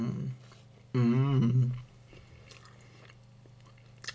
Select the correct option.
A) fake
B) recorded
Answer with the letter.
B